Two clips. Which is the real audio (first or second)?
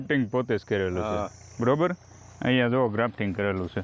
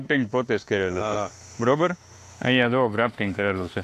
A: first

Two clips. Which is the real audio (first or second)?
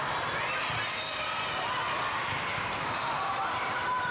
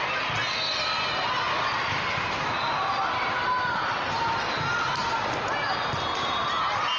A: second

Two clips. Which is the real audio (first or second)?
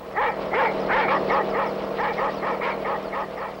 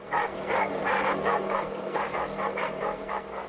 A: first